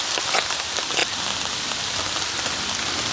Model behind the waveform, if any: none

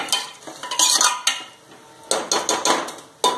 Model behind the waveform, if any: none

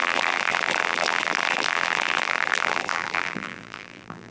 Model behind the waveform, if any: vocoder, BigVGAN v2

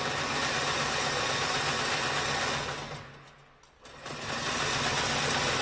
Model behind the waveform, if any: none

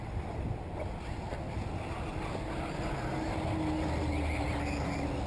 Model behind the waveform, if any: none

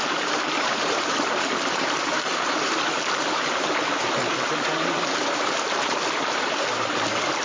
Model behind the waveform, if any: vocoder, BigVGAN v2